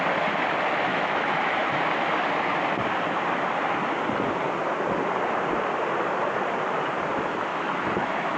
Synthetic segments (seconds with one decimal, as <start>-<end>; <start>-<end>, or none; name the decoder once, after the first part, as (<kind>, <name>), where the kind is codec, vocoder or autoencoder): 0.9-1.8 (autoencoder, DAC-VAE); 7.5-8.4